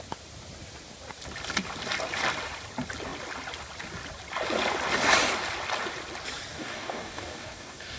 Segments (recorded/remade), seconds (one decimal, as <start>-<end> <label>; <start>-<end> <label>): 0.0-6.5 recorded; 6.5-8.0 remade